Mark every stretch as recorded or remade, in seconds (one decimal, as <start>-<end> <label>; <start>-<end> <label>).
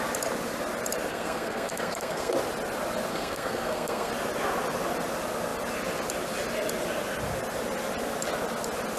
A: 0.0-1.1 recorded; 1.1-2.3 remade; 2.3-3.1 recorded; 3.1-4.1 remade; 4.1-9.0 recorded